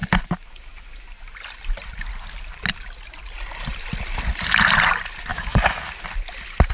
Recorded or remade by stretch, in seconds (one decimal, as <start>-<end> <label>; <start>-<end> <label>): 0.0-5.3 recorded; 5.3-5.8 remade; 5.8-6.7 recorded